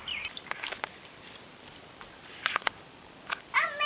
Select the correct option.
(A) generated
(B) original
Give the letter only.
B